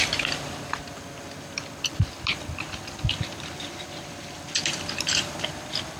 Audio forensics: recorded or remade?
remade